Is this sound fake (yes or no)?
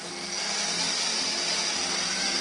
no